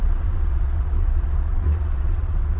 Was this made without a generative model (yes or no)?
no